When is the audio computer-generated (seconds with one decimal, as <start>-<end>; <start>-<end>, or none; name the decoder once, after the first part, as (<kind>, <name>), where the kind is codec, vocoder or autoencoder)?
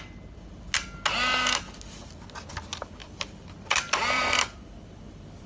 3.0-5.0 (vocoder, BigVGAN v2)